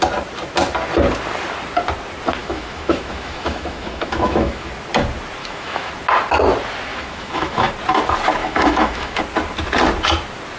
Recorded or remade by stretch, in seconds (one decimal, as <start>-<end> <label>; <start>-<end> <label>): 0.0-2.4 recorded; 2.4-4.7 remade; 4.7-5.4 recorded; 5.4-5.9 remade; 5.9-6.9 recorded; 6.9-7.7 remade; 7.7-8.4 recorded; 8.4-9.2 remade; 9.2-10.6 recorded